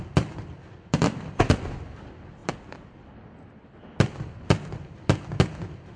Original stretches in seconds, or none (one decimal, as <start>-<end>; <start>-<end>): 0.0-6.0